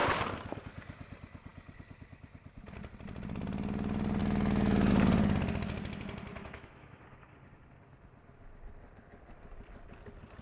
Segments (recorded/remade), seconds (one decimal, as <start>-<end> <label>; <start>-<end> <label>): 0.0-4.2 recorded; 4.2-4.9 remade; 4.9-6.3 recorded; 6.3-7.0 remade; 7.0-10.4 recorded